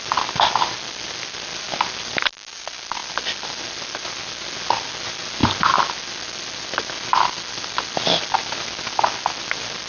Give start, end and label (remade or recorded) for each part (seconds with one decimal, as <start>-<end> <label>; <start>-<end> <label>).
0.0-9.9 recorded